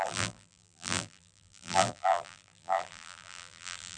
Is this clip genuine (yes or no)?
no